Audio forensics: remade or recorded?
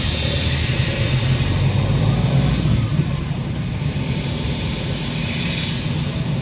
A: recorded